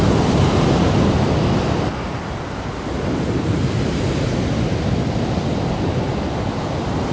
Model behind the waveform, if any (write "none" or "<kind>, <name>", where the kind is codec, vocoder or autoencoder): none